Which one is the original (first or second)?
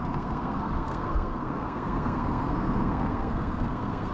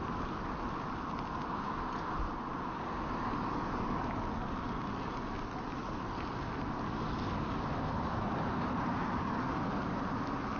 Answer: second